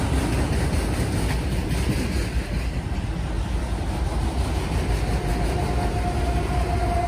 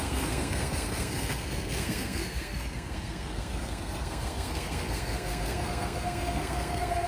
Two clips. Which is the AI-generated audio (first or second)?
second